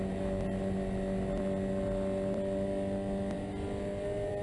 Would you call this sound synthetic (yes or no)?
no